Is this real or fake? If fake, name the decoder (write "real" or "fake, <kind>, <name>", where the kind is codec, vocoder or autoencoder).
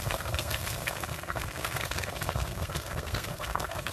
fake, codec, SNAC